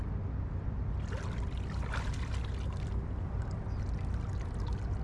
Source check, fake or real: real